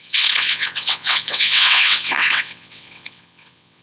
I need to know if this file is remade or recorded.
remade